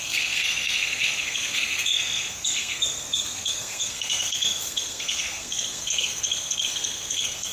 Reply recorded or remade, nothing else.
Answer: remade